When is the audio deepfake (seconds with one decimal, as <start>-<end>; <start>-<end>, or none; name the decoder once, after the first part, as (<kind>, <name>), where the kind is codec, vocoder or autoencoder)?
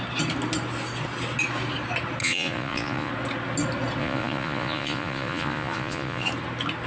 2.2-3.1 (vocoder, Vocos); 4.0-6.3